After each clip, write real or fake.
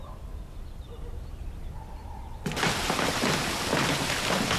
real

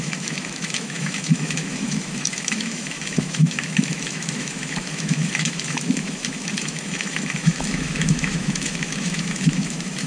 fake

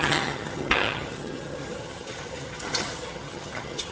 fake